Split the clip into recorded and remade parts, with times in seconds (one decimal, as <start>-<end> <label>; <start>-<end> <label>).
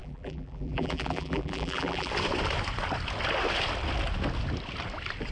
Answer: 0.0-2.1 remade; 2.1-5.3 recorded